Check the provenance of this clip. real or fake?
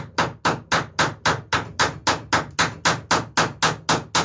real